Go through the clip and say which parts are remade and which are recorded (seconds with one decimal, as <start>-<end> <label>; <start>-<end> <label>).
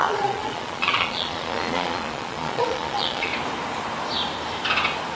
0.0-3.3 remade; 3.3-5.2 recorded